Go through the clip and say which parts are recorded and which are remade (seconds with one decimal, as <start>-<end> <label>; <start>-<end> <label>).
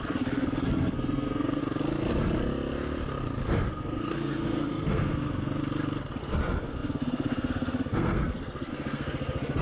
0.0-1.6 remade; 1.6-3.7 recorded; 3.7-5.6 remade; 5.6-6.2 recorded; 6.2-9.6 remade